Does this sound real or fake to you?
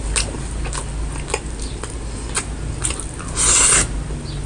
real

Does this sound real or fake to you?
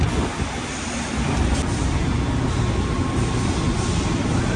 real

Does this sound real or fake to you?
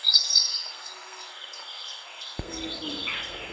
fake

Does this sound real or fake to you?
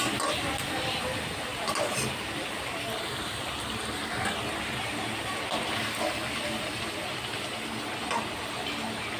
real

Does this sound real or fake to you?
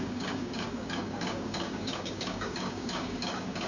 fake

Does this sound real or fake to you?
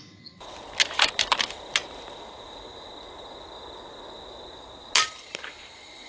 real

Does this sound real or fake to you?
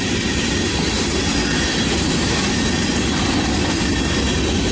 real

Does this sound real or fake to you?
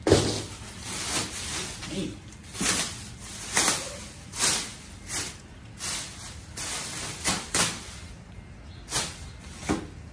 real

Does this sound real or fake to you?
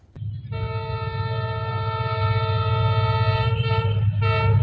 real